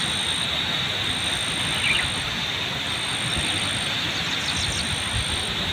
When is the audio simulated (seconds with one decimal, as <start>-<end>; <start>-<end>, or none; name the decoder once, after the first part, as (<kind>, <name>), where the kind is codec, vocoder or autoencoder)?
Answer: none